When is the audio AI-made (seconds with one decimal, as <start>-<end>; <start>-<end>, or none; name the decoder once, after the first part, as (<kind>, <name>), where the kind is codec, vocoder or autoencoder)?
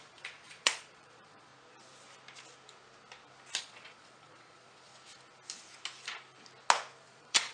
0.0-1.5 (vocoder, Vocos); 3.6-4.9; 7.0-7.5